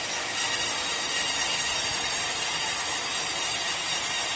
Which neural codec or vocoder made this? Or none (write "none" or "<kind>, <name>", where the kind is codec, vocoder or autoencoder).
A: none